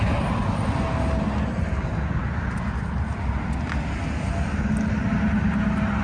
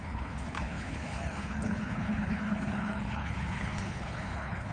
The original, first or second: first